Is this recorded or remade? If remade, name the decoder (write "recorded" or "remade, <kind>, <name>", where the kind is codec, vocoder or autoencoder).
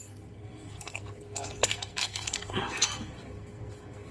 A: remade, codec, SNAC